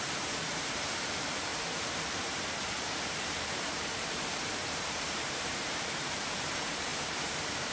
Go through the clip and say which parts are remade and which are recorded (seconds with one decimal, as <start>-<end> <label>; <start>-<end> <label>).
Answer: 0.0-7.7 remade